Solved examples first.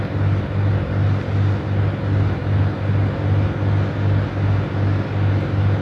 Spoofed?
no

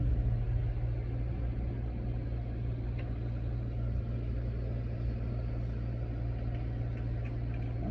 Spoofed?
no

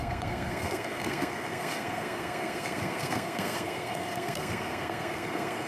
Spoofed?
yes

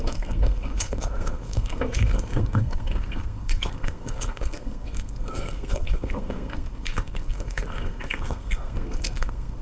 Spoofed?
yes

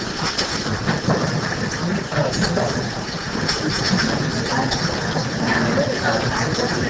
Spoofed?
no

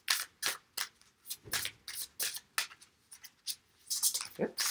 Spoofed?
no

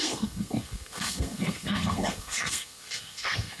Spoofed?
yes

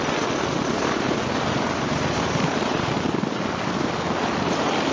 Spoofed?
no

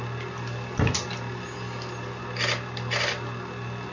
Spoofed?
no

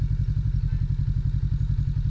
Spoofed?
no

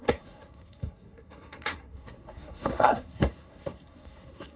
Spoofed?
yes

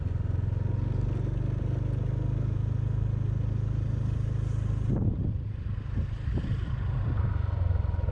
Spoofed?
no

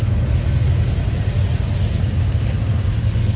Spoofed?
no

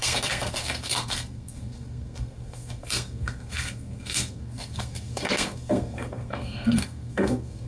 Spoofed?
yes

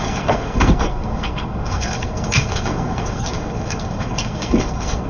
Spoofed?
yes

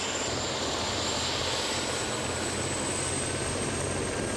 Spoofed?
no